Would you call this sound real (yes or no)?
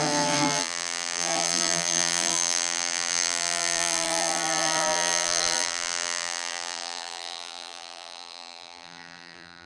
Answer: no